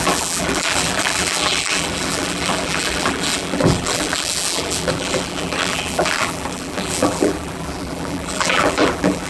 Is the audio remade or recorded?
remade